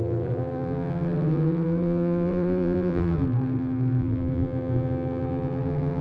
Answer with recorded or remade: remade